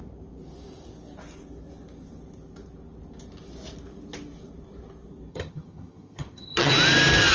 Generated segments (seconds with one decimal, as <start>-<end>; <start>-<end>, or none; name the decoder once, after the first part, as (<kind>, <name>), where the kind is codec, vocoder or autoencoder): 5.3-6.7 (vocoder, HiFi-GAN)